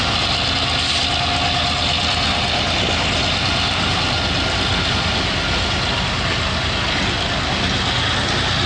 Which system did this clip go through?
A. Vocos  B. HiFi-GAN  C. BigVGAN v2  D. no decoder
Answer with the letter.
D